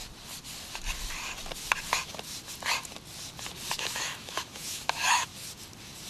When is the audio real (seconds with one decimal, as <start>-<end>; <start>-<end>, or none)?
0.0-3.7; 5.3-6.1